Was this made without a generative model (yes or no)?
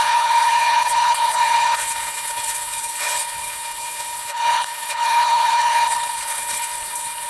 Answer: no